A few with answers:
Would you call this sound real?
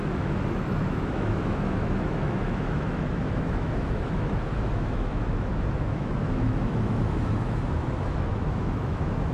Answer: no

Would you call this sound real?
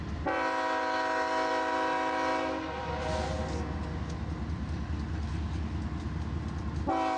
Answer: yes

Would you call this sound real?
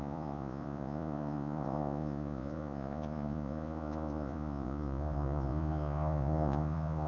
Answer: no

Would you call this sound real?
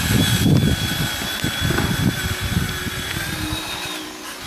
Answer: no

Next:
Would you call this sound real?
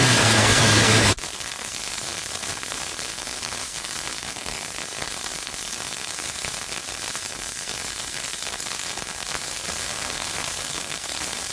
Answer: no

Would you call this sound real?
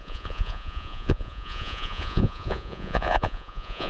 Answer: no